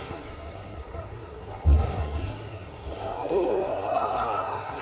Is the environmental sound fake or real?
fake